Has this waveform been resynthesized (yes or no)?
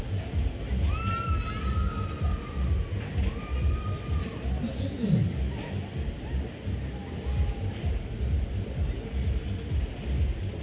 no